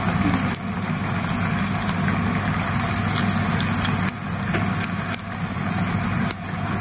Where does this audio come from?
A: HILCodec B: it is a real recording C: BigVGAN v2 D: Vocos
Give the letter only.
B